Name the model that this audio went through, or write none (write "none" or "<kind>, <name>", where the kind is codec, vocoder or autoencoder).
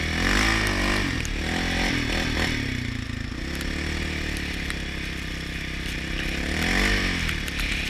none